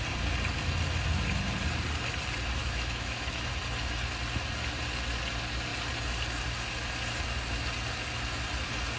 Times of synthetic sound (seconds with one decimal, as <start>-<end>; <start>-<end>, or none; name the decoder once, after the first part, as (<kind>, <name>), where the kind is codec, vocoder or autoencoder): 2.6-3.5 (autoencoder, DAC-VAE)